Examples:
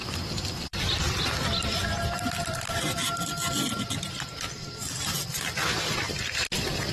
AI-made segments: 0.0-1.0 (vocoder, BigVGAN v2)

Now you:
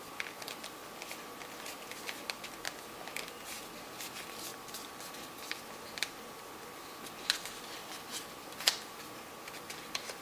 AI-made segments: 4.5-5.0 (vocoder, BigVGAN v2); 7.8-8.9

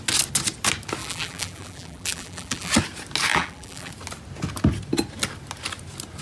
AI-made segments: 1.0-2.7 (vocoder, BigVGAN v2); 3.3-3.9

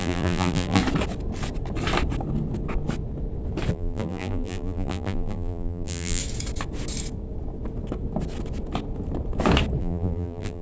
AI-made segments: 0.0-0.8 (vocoder, BigVGAN v2); 3.7-6.2; 9.8-10.6

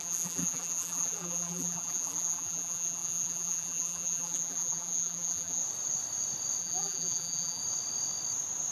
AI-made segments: 0.0-5.6 (vocoder, BigVGAN v2); 6.6-7.6